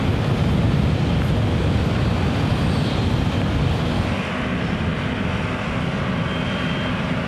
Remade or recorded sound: recorded